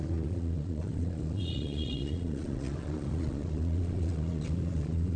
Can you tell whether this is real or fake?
fake